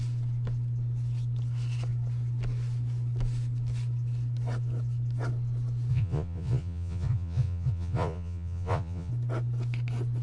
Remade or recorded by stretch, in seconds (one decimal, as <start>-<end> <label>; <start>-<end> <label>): 0.0-5.9 recorded; 5.9-9.1 remade; 9.1-10.2 recorded